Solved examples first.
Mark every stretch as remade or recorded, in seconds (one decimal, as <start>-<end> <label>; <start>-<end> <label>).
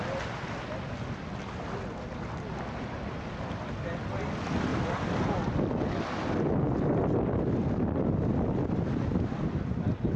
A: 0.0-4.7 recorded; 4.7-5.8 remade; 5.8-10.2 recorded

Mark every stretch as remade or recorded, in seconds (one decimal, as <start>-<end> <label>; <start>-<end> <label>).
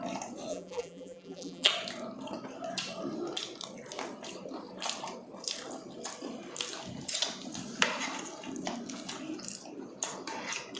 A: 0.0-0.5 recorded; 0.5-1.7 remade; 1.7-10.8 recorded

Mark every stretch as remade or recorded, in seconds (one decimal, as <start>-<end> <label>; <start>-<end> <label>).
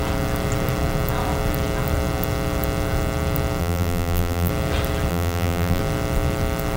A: 0.0-3.6 recorded; 3.6-4.5 remade; 4.5-5.1 recorded; 5.1-5.8 remade; 5.8-6.8 recorded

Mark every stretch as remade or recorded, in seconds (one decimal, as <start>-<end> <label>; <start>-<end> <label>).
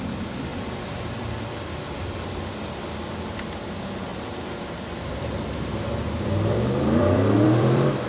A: 0.0-0.5 recorded; 0.5-2.5 remade; 2.5-4.1 recorded; 4.1-8.1 remade